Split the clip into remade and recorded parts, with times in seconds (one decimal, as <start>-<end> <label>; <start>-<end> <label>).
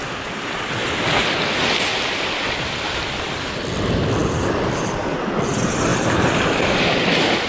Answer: 0.0-0.7 remade; 0.7-1.9 recorded; 1.9-3.5 remade; 3.5-5.9 recorded; 5.9-7.5 remade